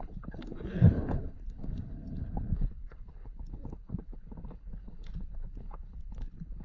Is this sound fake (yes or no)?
yes